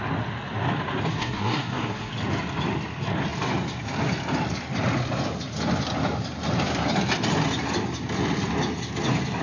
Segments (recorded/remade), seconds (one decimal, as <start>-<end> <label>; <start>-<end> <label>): 0.0-1.2 recorded; 1.2-2.1 remade; 2.1-9.4 recorded